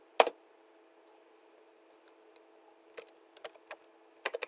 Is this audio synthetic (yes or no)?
no